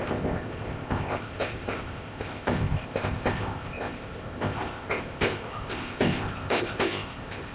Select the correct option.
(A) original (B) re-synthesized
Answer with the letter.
B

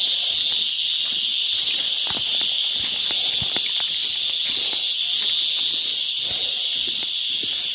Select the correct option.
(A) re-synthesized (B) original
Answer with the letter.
B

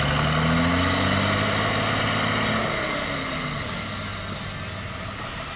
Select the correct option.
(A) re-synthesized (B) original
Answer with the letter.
B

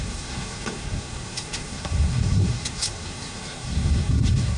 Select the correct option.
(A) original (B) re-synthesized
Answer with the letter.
B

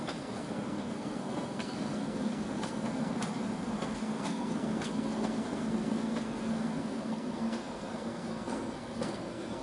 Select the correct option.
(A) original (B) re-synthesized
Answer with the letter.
B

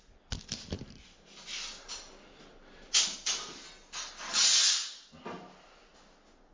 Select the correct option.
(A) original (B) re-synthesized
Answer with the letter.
A